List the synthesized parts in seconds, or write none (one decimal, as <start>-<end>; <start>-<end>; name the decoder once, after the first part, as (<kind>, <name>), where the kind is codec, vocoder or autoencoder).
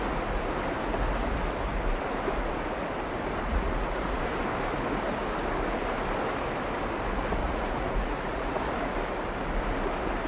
3.5-4.4 (vocoder, Vocos); 7.4-8.6